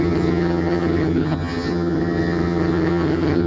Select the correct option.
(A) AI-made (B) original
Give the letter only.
A